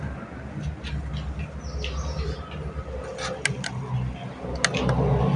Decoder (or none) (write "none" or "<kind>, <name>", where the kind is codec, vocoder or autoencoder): none